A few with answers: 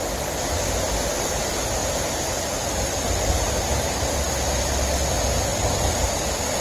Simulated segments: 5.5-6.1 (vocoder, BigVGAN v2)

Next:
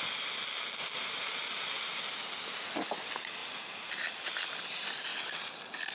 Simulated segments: none

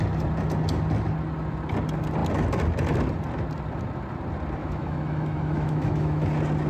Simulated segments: 4.6-6.3 (autoencoder, DAC-VAE)

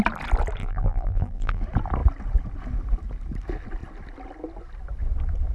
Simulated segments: 0.6-1.6 (vocoder, BigVGAN v2)

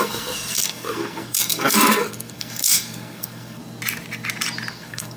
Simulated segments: 0.0-3.6 (codec, SNAC); 4.7-5.2